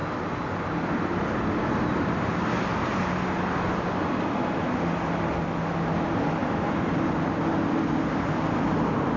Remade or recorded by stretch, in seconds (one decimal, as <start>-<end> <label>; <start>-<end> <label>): 0.0-9.2 recorded